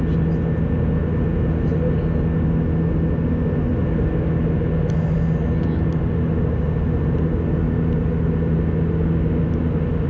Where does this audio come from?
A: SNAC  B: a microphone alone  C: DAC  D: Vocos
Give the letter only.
B